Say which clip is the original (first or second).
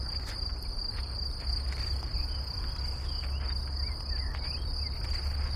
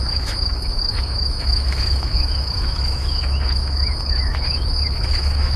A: first